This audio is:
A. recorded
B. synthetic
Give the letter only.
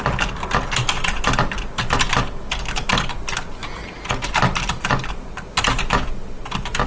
A